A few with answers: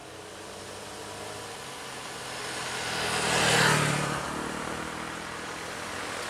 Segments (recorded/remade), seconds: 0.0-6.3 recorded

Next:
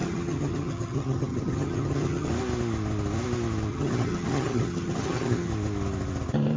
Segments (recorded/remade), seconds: 0.0-2.3 remade; 2.3-3.7 recorded; 3.7-5.5 remade; 5.5-6.6 recorded

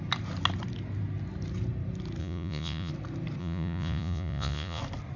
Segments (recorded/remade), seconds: 0.0-2.2 recorded; 2.2-2.9 remade; 2.9-3.4 recorded; 3.4-4.8 remade; 4.8-5.2 recorded

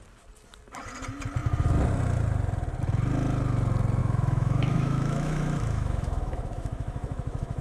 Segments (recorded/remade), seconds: 0.0-4.0 recorded; 4.0-7.6 remade

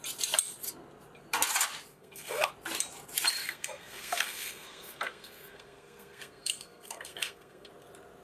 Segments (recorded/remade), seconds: 0.0-1.9 recorded; 1.9-2.5 remade; 2.5-3.4 recorded; 3.4-7.7 remade; 7.7-8.2 recorded

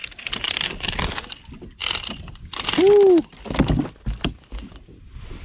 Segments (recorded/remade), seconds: 0.0-5.4 recorded

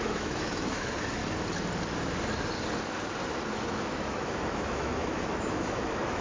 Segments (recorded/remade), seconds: 0.0-1.2 remade; 1.2-3.5 recorded; 3.5-6.2 remade